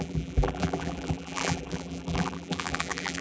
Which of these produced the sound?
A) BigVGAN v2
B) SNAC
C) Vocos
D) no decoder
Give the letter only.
A